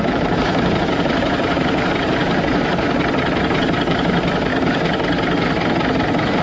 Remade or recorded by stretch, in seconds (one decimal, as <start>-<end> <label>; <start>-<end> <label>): 0.0-2.2 remade; 2.2-3.9 recorded; 3.9-4.5 remade; 4.5-6.4 recorded